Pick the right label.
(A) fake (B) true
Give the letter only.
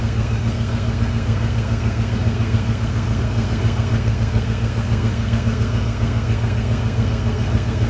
A